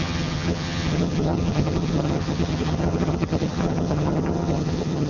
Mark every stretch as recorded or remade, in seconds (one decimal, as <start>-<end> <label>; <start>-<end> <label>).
0.0-5.1 remade